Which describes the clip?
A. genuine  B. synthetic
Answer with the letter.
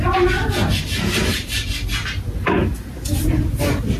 A